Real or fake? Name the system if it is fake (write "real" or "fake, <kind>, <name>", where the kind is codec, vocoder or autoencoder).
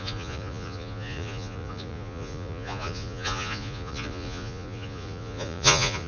fake, vocoder, Vocos